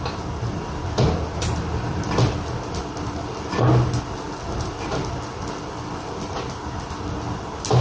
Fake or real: real